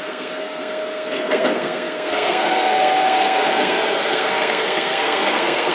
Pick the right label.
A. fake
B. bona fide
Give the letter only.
A